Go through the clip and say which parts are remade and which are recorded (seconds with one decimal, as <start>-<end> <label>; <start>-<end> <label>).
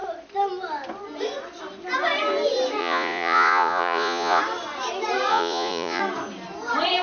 0.0-2.8 recorded; 2.8-4.4 remade; 4.4-5.3 recorded; 5.3-6.0 remade; 6.0-7.0 recorded